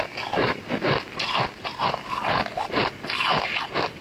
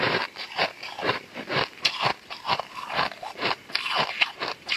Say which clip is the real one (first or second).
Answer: first